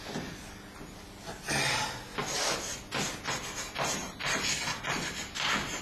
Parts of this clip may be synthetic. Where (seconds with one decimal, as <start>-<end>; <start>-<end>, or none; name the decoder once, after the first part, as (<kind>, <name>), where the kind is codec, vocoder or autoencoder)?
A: none